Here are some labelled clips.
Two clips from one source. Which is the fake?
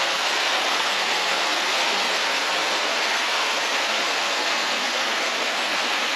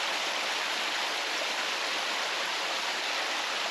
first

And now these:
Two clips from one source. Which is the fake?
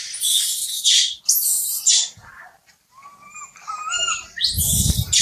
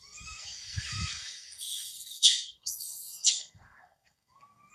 second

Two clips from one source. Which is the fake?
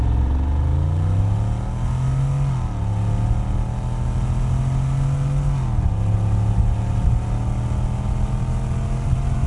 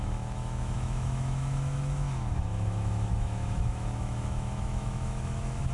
second